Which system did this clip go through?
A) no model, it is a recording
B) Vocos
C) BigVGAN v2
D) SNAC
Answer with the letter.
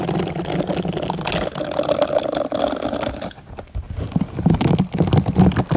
A